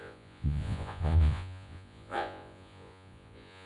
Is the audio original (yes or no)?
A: no